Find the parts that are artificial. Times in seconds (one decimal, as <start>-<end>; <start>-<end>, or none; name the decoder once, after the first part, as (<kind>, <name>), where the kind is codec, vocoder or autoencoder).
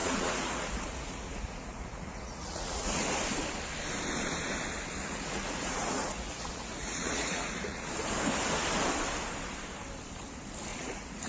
0.0-3.0 (vocoder, Vocos); 5.0-7.9; 10.7-11.3